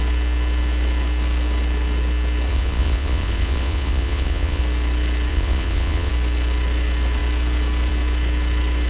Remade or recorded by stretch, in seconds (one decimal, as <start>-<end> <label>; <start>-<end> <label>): 0.0-2.5 recorded; 2.5-4.6 remade; 4.6-5.3 recorded; 5.3-6.1 remade; 6.1-8.9 recorded